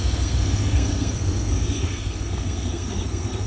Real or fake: fake